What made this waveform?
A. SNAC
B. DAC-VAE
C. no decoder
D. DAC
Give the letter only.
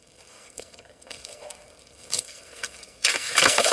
A